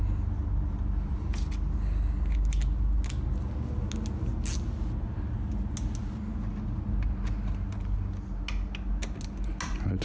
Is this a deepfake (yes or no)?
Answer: no